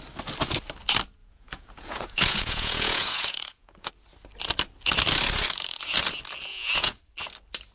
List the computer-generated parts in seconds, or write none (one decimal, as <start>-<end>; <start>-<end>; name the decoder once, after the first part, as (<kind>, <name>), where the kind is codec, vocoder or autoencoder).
1.2-3.9 (vocoder, Vocos); 6.5-7.0

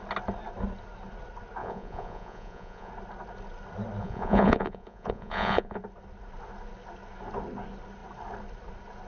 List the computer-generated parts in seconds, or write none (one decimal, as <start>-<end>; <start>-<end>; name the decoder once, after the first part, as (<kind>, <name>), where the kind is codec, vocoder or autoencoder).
1.6-2.9 (vocoder, Vocos); 4.0-5.8

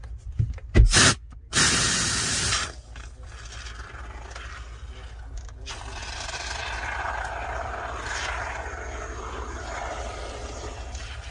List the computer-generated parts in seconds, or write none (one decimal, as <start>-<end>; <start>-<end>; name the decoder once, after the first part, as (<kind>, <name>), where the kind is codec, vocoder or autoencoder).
none

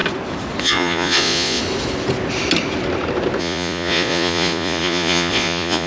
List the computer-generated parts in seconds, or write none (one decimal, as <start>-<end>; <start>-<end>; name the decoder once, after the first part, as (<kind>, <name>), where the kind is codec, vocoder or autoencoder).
0.6-1.6 (vocoder, Vocos); 3.4-5.9